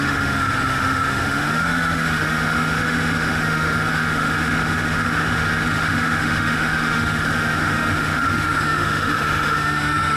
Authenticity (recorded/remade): remade